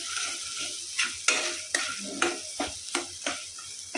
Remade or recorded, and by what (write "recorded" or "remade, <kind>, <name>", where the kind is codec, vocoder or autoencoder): recorded